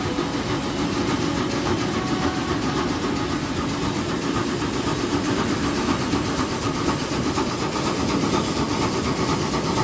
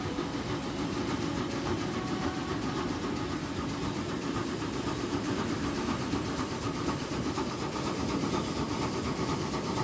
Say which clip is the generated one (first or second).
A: second